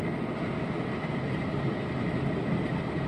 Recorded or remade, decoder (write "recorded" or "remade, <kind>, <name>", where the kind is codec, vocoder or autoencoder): recorded